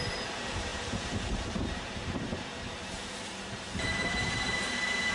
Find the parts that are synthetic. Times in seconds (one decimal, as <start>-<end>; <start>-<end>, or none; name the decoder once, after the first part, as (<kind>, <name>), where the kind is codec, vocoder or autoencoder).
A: 0.0-5.1 (vocoder, BigVGAN v2)